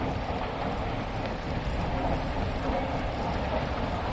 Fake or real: real